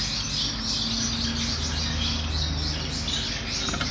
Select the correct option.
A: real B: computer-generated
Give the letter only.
A